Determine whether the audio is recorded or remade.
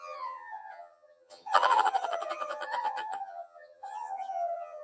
remade